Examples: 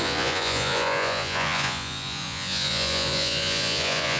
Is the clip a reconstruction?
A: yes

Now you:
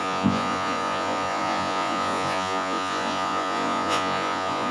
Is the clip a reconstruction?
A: yes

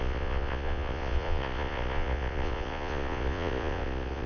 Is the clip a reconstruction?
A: yes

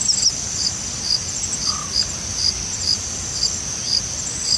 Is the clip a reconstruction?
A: no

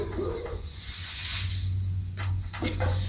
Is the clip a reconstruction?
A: yes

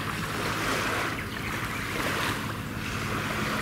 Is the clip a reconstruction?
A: no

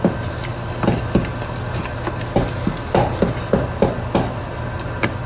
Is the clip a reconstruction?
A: no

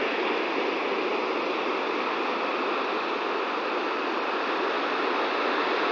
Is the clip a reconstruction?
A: no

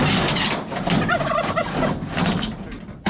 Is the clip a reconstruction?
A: no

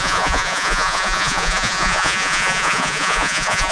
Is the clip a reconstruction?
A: yes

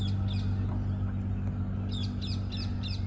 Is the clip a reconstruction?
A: no